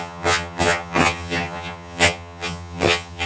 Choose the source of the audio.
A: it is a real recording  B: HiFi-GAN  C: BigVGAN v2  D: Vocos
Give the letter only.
B